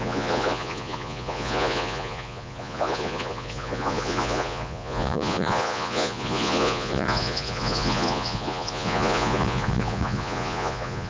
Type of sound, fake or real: fake